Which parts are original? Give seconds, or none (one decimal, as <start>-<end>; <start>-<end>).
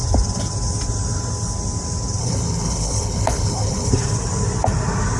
0.0-2.2; 3.9-5.2